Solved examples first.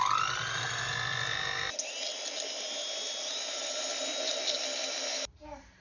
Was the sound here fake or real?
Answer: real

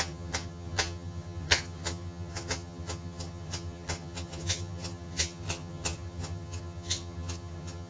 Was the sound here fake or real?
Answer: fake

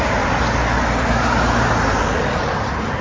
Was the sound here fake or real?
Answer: real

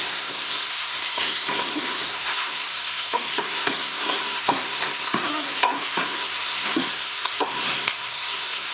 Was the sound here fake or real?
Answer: fake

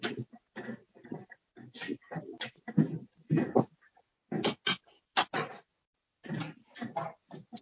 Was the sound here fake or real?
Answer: real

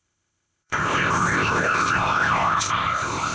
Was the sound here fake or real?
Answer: fake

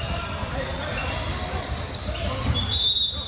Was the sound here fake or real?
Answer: real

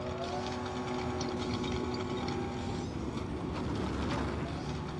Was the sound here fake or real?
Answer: real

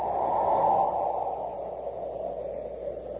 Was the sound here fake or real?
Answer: real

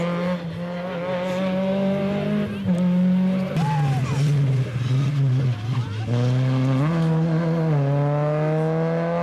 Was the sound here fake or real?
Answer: real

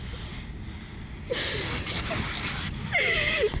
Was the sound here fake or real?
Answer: real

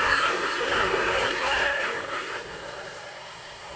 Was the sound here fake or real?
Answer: fake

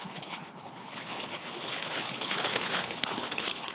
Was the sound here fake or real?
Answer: fake